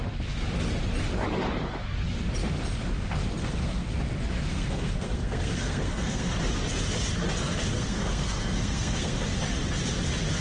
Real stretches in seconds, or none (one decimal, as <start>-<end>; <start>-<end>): 0.0-3.4; 3.9-4.5; 6.4-7.7; 9.2-10.4